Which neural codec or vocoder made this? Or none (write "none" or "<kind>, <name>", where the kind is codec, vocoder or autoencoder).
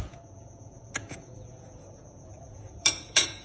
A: vocoder, Vocos